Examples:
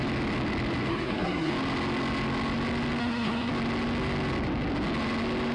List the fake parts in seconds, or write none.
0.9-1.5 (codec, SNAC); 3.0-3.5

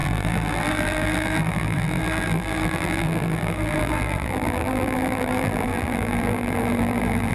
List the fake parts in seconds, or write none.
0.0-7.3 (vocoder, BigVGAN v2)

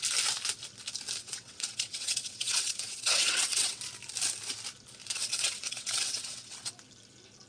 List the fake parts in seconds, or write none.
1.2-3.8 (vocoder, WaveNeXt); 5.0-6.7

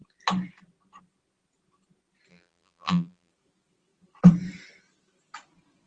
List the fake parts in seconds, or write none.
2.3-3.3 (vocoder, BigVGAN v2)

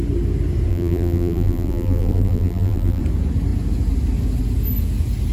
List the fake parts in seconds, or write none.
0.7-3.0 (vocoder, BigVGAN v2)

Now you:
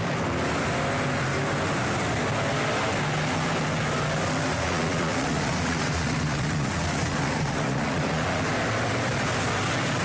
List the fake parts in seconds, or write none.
4.5-8.4 (vocoder, Vocos)

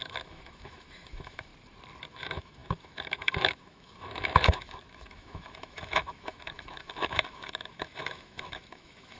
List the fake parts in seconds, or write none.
0.0-1.5 (autoencoder, DAC-VAE); 2.1-9.2